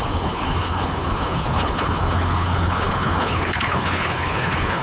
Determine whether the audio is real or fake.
fake